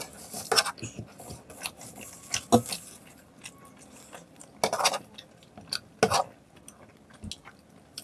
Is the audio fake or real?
real